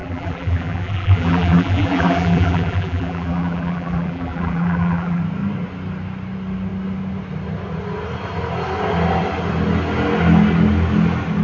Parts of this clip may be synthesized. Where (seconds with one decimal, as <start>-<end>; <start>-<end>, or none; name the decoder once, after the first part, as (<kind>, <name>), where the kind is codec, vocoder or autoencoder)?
0.0-5.2 (vocoder, BigVGAN v2)